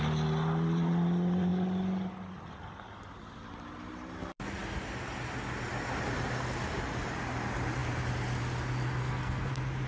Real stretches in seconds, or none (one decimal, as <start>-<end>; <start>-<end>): 0.0-9.0; 9.5-9.9